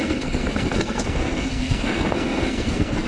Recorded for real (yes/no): no